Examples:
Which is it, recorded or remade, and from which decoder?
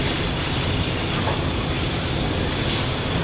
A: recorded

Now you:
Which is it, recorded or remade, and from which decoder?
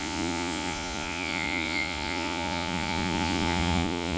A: remade, vocoder, Vocos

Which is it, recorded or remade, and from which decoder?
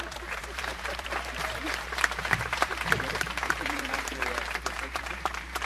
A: remade, vocoder, BigVGAN v2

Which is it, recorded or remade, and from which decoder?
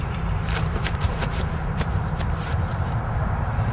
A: remade, vocoder, BigVGAN v2